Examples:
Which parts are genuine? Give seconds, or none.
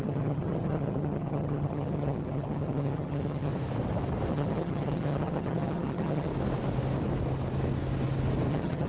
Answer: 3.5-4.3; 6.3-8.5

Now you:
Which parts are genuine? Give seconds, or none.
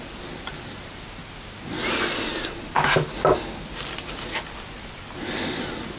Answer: 0.0-6.0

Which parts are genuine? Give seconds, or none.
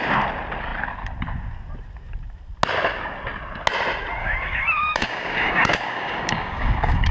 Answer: 0.0-4.2